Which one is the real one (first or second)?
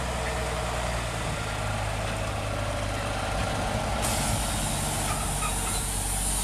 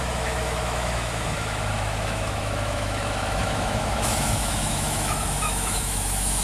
first